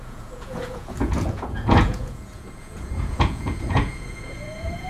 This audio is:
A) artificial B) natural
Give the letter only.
A